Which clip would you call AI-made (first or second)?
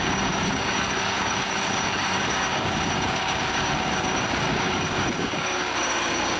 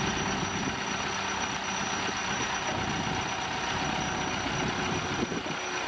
first